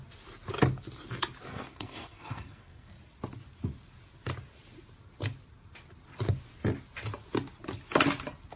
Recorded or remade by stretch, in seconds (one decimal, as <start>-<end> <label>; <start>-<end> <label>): 0.0-1.5 recorded; 1.5-2.9 remade; 2.9-8.6 recorded